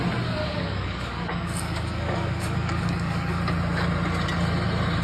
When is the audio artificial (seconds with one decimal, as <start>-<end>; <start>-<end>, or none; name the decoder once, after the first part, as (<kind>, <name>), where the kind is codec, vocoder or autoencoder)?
0.4-3.4 (codec, DAC)